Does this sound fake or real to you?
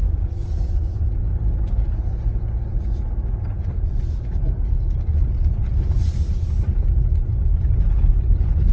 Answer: real